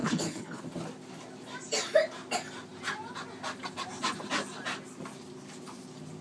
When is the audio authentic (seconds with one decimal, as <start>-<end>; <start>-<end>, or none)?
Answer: 0.6-6.2